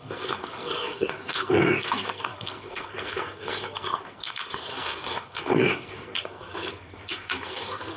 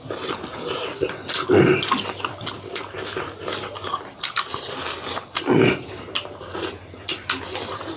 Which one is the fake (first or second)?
first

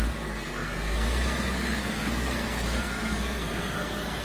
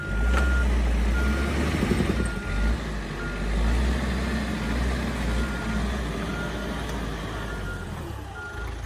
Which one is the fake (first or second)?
first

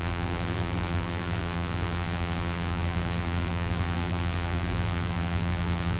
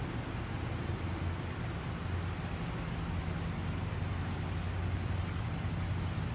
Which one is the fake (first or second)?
first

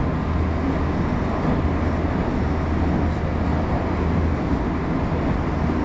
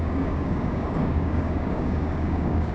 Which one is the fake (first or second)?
second